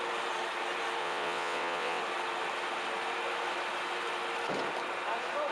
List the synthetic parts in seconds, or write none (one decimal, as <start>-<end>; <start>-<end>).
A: 1.0-2.0